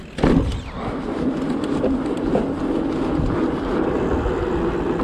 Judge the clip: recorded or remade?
recorded